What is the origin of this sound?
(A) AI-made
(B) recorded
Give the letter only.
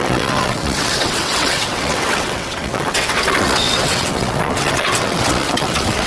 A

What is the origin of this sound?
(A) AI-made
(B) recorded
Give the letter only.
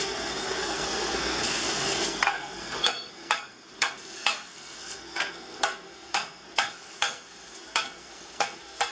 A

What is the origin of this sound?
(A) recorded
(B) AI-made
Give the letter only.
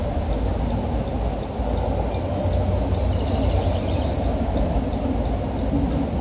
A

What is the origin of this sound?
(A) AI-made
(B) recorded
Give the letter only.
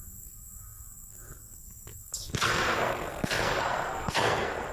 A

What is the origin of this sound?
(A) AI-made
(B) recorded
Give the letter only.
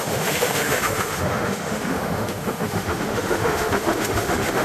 A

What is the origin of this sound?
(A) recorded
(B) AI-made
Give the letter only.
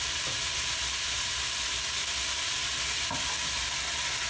A